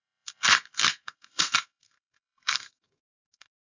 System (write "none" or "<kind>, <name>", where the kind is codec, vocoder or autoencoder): codec, SNAC